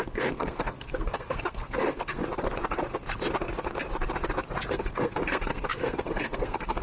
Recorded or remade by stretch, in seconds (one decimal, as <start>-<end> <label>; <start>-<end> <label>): 0.0-2.2 remade; 2.2-4.7 recorded; 4.7-6.8 remade